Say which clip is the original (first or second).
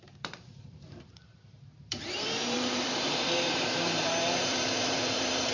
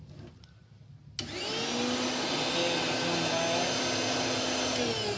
second